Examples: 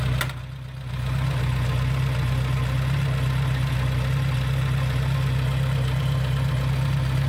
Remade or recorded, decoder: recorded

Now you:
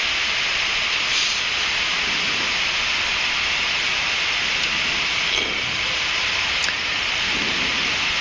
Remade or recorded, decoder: recorded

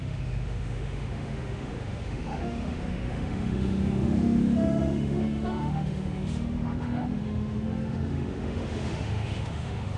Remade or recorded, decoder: remade, autoencoder, DAC-VAE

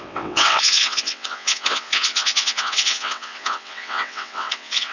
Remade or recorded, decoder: remade, vocoder, WaveNeXt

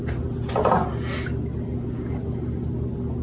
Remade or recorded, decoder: recorded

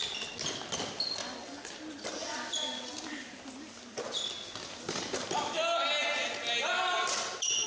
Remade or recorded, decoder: recorded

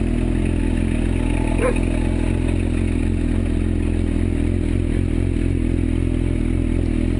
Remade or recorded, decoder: recorded